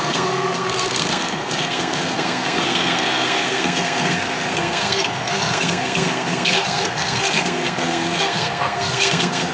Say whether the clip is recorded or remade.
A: remade